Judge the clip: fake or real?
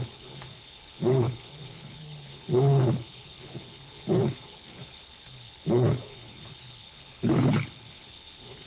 fake